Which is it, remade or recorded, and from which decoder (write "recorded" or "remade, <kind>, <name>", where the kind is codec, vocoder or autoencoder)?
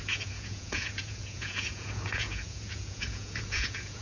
remade, vocoder, Vocos